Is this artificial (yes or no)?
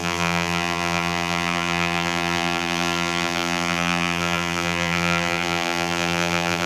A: yes